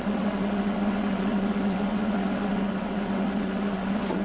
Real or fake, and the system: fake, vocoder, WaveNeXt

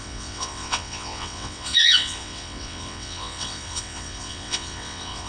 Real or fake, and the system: fake, vocoder, WaveNeXt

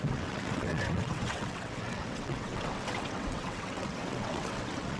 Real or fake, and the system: fake, vocoder, WaveNeXt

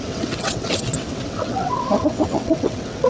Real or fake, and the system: fake, vocoder, WaveNeXt